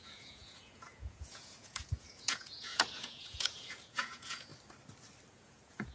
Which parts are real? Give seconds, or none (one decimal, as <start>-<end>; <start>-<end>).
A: 4.5-5.3